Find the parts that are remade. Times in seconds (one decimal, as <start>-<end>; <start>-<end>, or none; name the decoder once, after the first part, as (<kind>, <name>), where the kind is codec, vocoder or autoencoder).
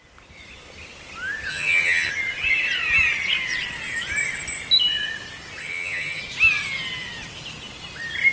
1.5-2.1 (vocoder, HiFi-GAN); 5.6-6.2